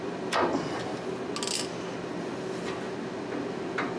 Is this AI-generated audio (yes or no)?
no